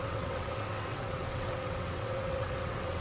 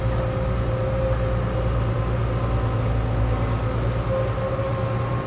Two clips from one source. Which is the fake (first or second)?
first